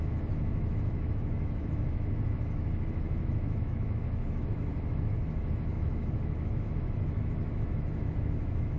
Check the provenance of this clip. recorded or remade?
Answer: remade